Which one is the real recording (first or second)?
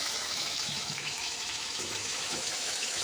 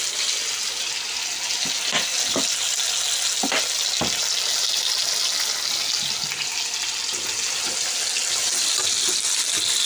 second